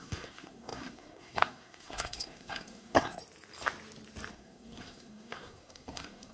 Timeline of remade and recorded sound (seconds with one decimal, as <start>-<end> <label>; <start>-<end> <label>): 0.0-3.2 remade; 3.2-4.3 recorded; 4.3-6.3 remade

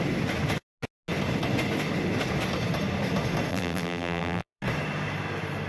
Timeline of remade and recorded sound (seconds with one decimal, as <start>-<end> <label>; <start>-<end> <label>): 0.0-3.5 recorded; 3.5-4.6 remade; 4.6-5.7 recorded

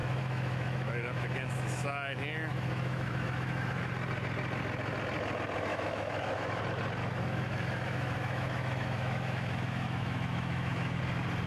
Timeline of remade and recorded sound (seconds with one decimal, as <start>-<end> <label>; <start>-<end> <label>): 0.0-3.9 remade; 3.9-5.7 recorded; 5.7-6.6 remade; 6.6-7.0 recorded; 7.0-11.0 remade; 11.0-11.5 recorded